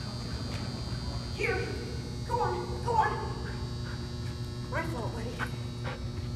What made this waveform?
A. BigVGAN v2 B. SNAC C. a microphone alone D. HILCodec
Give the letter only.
C